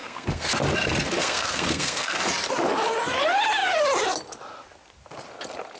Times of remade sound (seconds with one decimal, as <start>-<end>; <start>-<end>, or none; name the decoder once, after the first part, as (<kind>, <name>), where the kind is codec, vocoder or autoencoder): 0.0-0.5 (codec, SNAC); 1.2-2.2